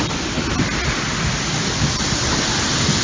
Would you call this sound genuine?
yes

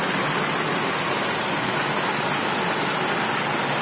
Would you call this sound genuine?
yes